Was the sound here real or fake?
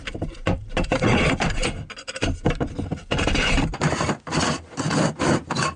real